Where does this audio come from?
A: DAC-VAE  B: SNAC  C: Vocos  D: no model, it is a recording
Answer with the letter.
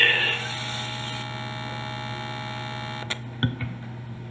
D